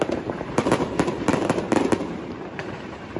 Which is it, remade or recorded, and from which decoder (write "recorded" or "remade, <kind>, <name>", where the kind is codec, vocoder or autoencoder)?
remade, vocoder, BigVGAN v2